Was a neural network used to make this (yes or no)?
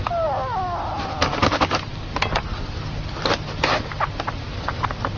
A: no